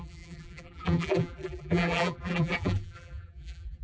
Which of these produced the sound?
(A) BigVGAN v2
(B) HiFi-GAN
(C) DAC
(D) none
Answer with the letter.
A